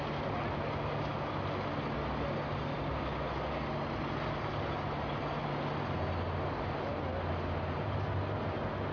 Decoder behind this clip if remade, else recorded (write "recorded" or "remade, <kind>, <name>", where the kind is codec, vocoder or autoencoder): recorded